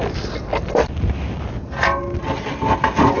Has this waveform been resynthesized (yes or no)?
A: no